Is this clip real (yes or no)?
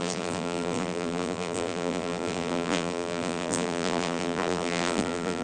no